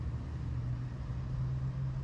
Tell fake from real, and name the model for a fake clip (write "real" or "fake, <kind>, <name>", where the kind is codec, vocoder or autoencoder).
real